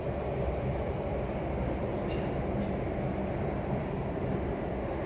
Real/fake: fake